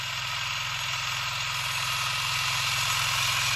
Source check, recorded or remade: recorded